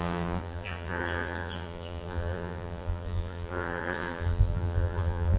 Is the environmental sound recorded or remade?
remade